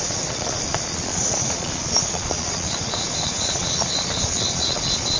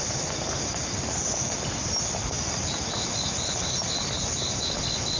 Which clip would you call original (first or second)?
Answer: second